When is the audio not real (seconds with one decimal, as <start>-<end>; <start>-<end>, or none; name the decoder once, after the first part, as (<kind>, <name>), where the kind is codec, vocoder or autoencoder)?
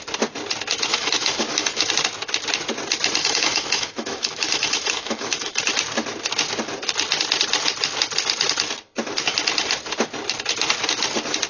0.9-1.9 (autoencoder, DAC-VAE); 3.2-5.6